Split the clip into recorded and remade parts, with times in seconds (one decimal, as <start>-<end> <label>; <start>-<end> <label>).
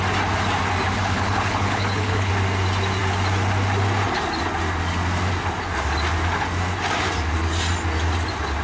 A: 0.0-1.0 recorded; 1.0-2.3 remade; 2.3-8.6 recorded